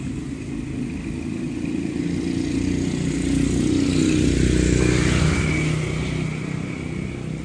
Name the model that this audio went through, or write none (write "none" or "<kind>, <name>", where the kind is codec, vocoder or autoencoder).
none